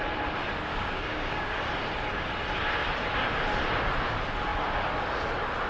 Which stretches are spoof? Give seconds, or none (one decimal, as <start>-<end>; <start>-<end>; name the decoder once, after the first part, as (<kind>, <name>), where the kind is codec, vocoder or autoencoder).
0.7-1.7 (codec, DAC)